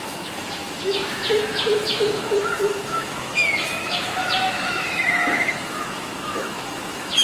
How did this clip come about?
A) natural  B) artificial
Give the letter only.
B